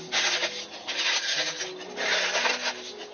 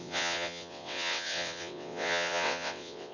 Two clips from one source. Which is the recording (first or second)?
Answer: first